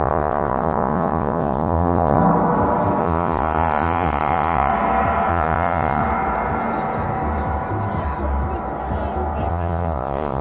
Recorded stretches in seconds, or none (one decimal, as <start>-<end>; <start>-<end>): 2.2-3.0; 4.7-5.3; 6.0-9.5